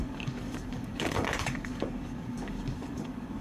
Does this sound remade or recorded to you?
remade